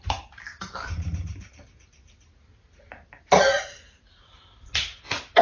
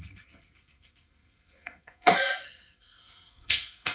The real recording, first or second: first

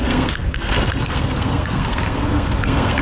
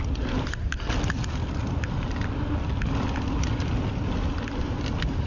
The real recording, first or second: second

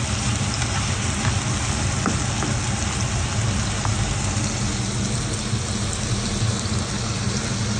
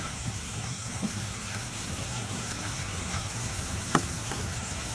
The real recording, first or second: first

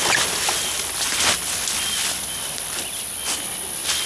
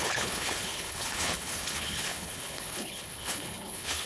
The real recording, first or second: first